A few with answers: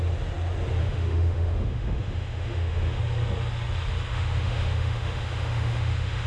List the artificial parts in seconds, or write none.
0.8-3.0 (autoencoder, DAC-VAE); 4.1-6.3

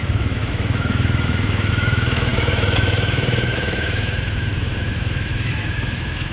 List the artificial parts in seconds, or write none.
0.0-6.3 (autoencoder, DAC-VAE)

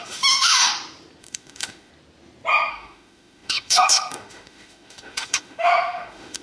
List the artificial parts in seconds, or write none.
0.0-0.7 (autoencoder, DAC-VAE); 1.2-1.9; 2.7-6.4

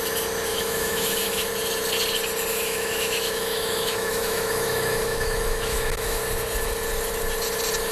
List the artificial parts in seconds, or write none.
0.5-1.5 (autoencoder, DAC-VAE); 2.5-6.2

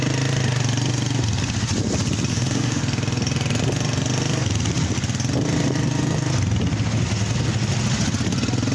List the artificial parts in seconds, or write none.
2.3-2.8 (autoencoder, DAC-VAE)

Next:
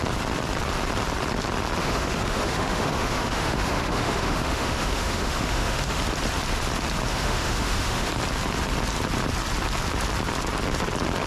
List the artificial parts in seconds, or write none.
1.8-6.0 (autoencoder, DAC-VAE); 7.1-8.1

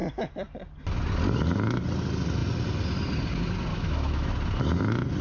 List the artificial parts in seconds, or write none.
3.7-4.3 (autoencoder, DAC-VAE)

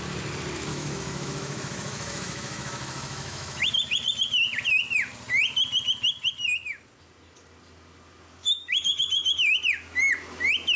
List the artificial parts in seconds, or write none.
0.7-3.7 (autoencoder, DAC-VAE); 8.4-9.6